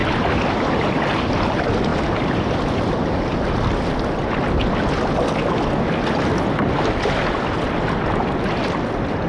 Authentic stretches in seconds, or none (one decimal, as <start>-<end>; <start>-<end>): 0.0-9.3